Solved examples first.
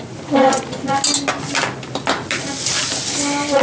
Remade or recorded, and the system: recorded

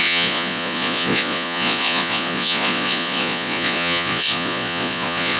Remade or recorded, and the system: remade, vocoder, Vocos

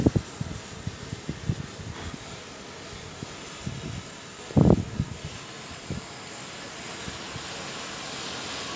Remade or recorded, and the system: recorded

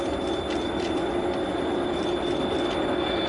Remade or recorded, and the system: recorded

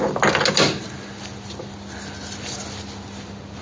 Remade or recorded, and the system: recorded